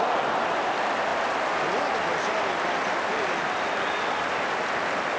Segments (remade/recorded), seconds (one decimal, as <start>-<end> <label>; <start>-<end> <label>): 0.0-5.2 recorded